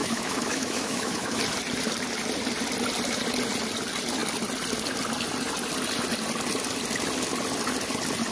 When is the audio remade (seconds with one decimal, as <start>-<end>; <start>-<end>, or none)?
0.0-1.4